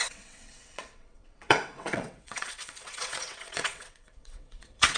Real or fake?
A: fake